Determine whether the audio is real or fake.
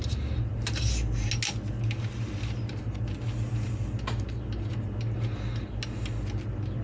real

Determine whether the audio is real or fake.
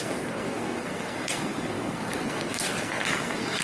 fake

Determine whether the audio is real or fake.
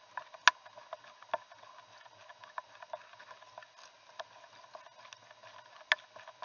real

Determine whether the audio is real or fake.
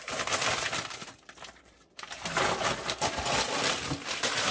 fake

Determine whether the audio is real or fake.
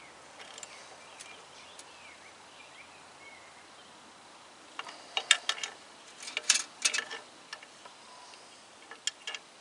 real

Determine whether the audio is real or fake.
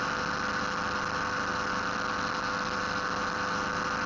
real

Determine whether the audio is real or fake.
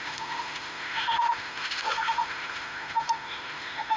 fake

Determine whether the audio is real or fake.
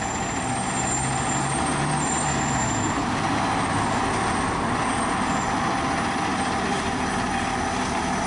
real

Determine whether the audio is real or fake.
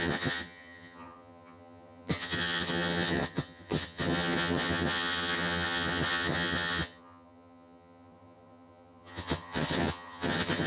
fake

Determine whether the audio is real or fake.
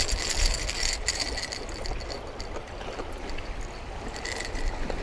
real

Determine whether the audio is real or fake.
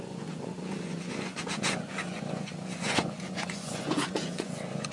fake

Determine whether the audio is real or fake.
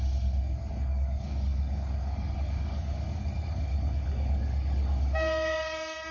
fake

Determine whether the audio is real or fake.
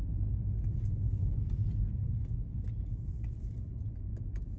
real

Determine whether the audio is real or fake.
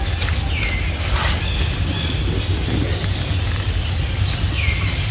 real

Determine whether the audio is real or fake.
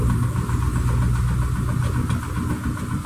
real